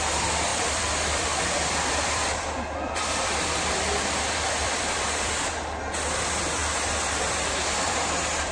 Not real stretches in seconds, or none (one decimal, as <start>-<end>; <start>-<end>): 0.5-5.5; 6.6-7.9